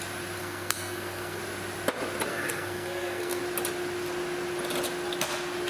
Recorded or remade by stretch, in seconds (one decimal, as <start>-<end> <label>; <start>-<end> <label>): 0.0-0.4 recorded; 0.4-1.4 remade; 1.4-2.3 recorded; 2.3-3.4 remade; 3.4-5.7 recorded